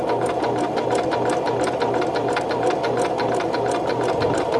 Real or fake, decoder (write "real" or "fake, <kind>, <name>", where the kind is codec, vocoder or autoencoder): real